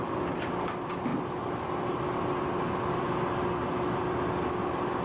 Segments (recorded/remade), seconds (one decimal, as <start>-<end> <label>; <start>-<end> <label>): 0.0-5.0 recorded